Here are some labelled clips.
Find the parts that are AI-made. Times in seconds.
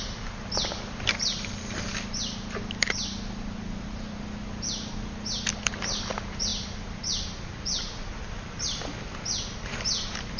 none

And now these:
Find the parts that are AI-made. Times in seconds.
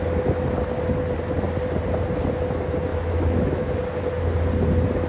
2.9-3.8 (autoencoder, DAC-VAE)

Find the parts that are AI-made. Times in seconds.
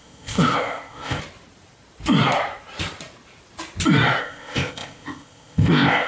0.0-1.2 (codec, ZipCodec); 4.2-6.1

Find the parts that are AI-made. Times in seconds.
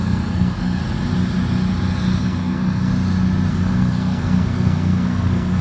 0.0-0.8 (codec, SNAC); 2.2-2.9; 3.5-5.6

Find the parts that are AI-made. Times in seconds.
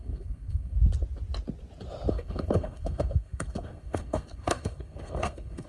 0.0-0.8 (codec, SNAC); 2.1-5.7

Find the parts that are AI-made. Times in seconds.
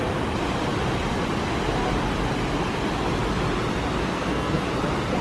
4.0-4.7 (codec, SNAC)